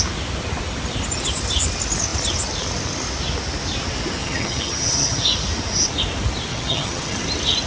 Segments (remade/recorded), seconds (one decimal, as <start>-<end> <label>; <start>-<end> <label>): 0.0-4.2 recorded; 4.2-5.2 remade; 5.2-6.5 recorded; 6.5-7.2 remade; 7.2-7.7 recorded